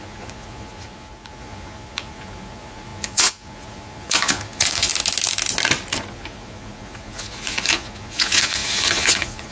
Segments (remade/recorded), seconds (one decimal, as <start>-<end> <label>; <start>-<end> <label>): 0.0-4.9 remade; 4.9-6.1 recorded; 6.1-9.5 remade